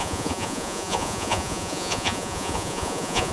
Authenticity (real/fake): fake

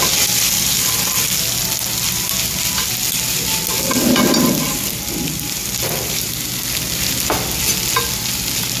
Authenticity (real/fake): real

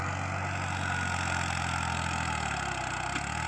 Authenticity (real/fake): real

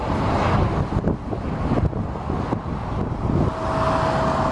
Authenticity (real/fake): real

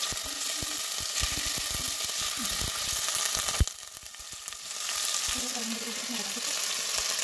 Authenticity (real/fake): real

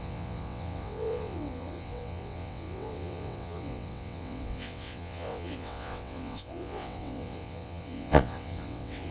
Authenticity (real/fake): fake